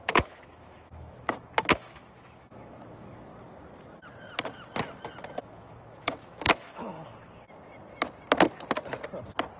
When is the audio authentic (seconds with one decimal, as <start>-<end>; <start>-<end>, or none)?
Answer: 3.3-5.4; 6.9-9.6